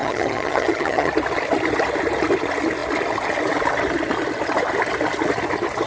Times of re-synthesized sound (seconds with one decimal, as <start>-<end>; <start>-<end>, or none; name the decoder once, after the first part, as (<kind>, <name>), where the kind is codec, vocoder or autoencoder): 0.0-1.1 (vocoder, HiFi-GAN)